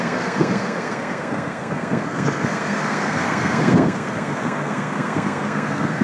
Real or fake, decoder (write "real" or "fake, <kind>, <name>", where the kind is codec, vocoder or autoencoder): fake, codec, SNAC